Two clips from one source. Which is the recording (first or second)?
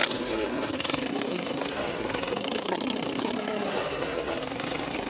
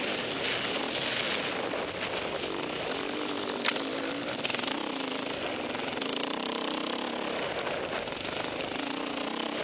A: second